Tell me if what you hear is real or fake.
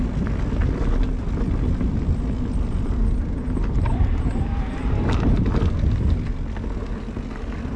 real